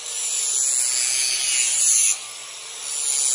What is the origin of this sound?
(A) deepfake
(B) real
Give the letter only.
B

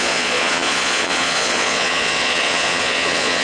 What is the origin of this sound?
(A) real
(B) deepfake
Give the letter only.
B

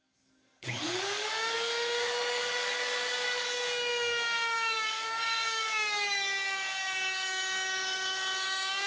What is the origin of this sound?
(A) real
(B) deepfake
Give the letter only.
B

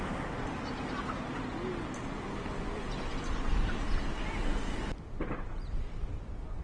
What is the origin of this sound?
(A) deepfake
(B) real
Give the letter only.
B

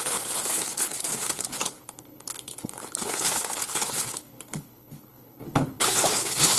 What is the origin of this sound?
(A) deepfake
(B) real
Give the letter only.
A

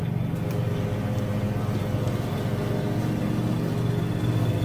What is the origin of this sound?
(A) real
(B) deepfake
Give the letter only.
A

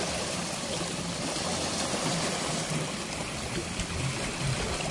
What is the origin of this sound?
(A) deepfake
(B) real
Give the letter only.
A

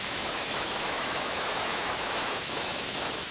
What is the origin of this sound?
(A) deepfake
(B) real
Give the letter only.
A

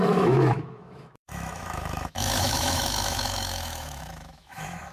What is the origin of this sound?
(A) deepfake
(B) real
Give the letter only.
A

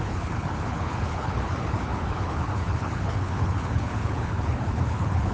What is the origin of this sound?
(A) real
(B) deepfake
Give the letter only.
B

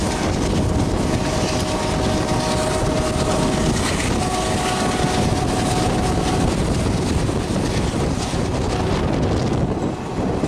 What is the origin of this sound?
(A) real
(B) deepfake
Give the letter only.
A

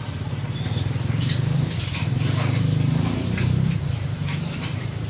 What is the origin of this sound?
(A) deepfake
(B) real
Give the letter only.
A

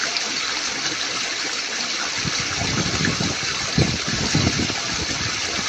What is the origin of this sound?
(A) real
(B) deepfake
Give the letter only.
A